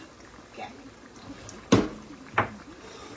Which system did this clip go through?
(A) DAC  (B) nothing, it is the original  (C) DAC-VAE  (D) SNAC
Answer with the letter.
B